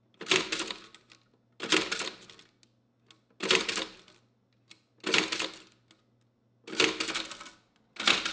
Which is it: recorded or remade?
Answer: recorded